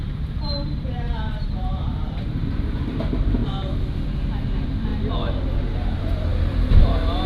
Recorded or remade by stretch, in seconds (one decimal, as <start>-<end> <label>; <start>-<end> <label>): 0.0-3.4 remade; 3.4-4.4 recorded; 4.4-4.9 remade; 4.9-5.4 recorded; 5.4-7.3 remade